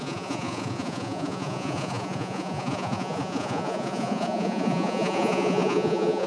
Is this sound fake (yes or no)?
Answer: yes